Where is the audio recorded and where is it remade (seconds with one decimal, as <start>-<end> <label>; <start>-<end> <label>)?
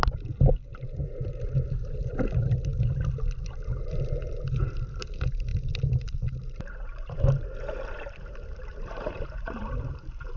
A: 0.0-2.7 remade; 2.7-3.8 recorded; 3.8-10.4 remade